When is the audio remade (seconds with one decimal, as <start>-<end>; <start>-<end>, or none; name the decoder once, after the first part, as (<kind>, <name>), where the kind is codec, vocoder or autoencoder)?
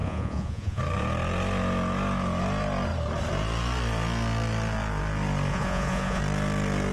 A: 0.0-0.8 (vocoder, Vocos); 5.5-6.2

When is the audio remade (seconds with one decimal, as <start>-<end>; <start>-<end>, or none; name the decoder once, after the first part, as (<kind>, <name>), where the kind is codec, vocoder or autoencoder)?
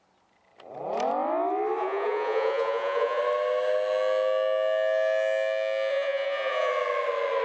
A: 1.8-3.2 (vocoder, Vocos); 5.9-6.7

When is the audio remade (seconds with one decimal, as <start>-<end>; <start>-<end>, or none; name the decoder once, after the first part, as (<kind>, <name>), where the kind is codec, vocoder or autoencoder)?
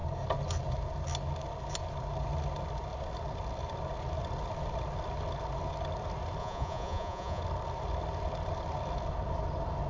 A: 6.4-7.4 (vocoder, Vocos)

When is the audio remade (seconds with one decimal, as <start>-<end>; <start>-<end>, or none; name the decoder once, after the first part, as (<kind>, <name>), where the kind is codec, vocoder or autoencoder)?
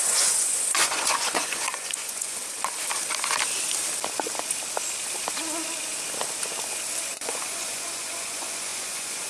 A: 0.0-2.4 (vocoder, Vocos); 7.1-9.3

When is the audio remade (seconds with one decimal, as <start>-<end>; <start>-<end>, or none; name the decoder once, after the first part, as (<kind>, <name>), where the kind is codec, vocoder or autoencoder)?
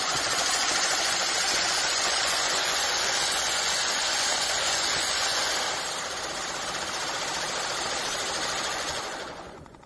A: 0.0-5.5 (vocoder, Vocos); 8.6-9.9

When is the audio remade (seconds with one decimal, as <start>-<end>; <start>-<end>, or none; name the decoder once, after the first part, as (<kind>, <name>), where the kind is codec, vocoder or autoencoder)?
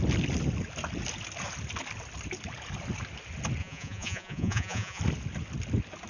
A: 3.6-5.0 (vocoder, Vocos)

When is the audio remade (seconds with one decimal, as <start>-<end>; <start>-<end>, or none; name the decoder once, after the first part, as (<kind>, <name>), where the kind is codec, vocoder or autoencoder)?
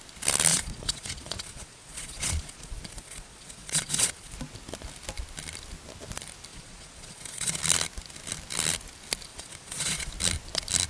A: 0.5-4.3 (vocoder, Vocos); 6.5-7.6; 9.3-10.1